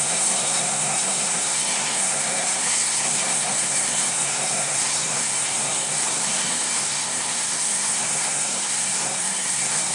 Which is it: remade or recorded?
remade